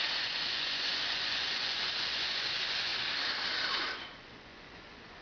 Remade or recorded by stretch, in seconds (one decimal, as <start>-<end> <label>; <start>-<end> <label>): 0.0-2.9 remade; 2.9-3.7 recorded; 3.7-5.2 remade